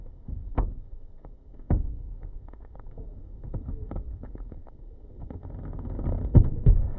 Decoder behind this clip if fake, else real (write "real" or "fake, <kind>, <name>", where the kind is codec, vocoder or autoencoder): fake, codec, SNAC